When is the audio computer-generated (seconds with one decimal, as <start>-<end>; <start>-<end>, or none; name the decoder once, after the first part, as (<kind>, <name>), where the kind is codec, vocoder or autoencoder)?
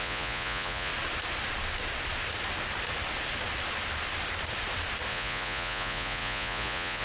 0.0-0.9 (vocoder, Vocos); 5.1-7.0